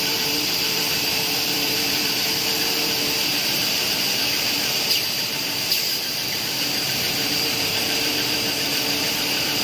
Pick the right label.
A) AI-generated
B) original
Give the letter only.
A